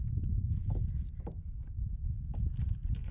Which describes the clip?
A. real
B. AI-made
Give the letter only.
A